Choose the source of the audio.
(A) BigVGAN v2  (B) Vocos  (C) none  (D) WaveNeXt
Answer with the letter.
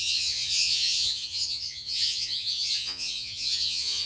B